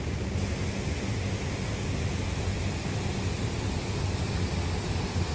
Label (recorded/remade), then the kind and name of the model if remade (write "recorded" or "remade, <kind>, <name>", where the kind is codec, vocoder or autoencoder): recorded